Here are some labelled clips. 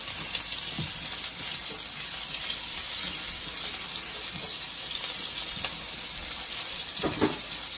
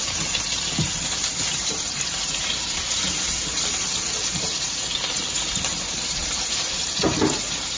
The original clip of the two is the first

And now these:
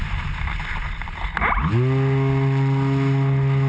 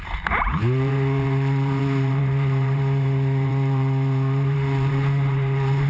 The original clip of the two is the first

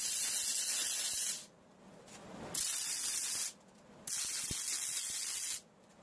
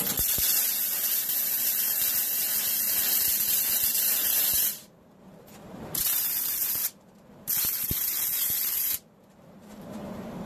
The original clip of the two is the first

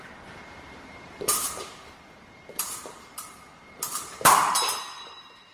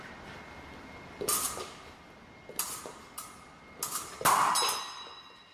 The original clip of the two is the second